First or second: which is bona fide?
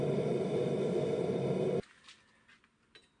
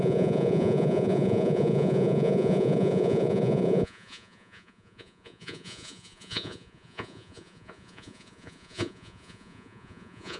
first